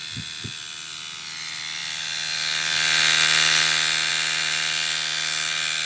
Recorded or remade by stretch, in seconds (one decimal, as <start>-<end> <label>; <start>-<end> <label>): 0.0-5.9 recorded

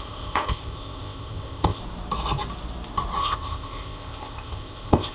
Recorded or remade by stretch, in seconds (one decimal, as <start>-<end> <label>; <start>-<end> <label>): 0.0-1.8 remade; 1.8-3.2 recorded; 3.2-5.1 remade

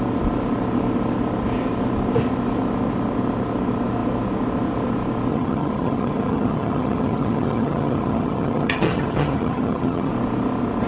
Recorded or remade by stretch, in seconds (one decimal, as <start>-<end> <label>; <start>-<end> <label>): 0.0-5.3 recorded; 5.3-10.1 remade; 10.1-10.9 recorded

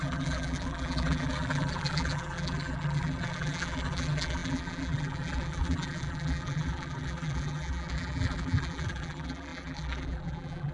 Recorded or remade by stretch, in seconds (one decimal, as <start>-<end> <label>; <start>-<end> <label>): 0.0-10.7 remade

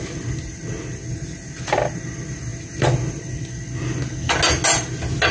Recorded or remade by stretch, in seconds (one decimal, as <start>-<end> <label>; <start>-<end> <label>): 0.0-5.3 recorded

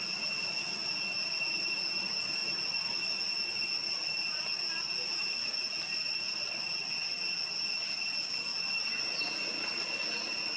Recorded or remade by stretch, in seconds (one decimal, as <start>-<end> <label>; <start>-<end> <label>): 0.0-10.6 recorded

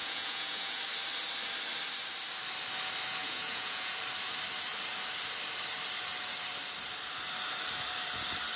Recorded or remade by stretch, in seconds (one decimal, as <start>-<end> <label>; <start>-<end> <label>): 0.0-0.8 remade; 0.8-3.2 recorded; 3.2-4.0 remade; 4.0-8.6 recorded